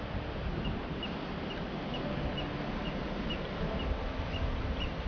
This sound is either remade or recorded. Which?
recorded